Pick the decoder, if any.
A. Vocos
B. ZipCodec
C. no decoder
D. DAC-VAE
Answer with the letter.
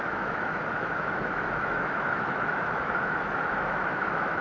D